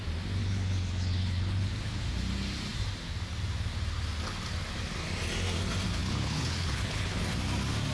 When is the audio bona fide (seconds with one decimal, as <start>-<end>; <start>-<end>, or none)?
0.0-0.4; 2.1-6.0; 7.2-7.9